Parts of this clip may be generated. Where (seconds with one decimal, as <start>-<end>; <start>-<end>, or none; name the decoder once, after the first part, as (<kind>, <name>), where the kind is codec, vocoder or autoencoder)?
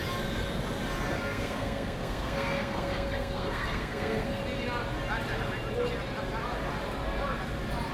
1.1-4.4 (codec, SNAC)